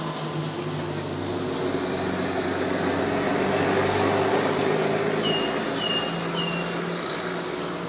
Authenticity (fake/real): real